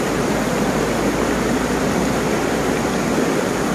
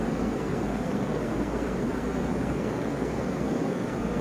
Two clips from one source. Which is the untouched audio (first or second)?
first